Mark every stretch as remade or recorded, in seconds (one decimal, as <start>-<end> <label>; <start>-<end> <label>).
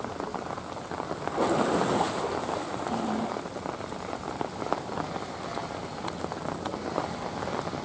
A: 0.0-7.8 recorded